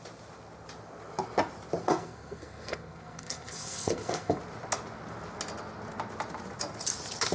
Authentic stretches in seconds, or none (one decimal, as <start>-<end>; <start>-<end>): 0.0-1.8; 4.4-7.3